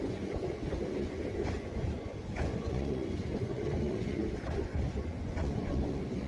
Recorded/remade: remade